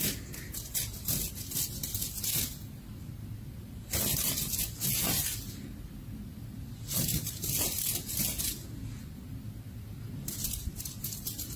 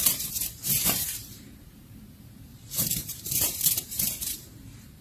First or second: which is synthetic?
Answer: second